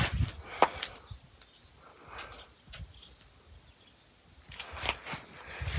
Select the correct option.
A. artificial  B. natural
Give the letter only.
B